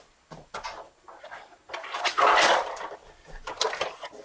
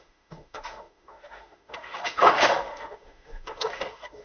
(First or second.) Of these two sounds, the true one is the first